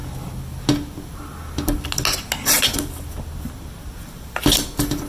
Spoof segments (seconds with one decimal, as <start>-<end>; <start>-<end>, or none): none